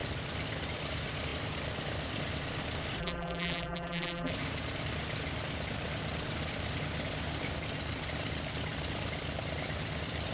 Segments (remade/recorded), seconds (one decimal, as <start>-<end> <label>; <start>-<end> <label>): 0.0-3.0 recorded; 3.0-4.3 remade; 4.3-10.3 recorded